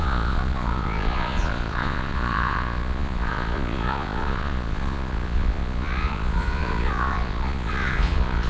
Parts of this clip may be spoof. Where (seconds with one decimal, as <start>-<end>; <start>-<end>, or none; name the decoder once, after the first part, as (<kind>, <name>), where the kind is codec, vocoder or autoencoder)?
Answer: 0.0-8.5 (vocoder, Vocos)